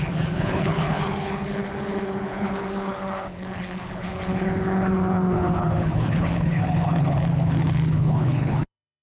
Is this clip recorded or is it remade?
remade